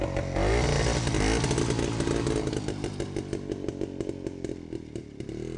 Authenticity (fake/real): real